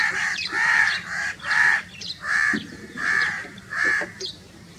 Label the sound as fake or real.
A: fake